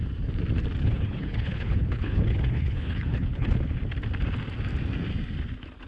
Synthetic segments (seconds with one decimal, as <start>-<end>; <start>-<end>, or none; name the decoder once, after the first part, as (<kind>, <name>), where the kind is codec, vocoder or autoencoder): 0.8-3.6 (codec, HILCodec)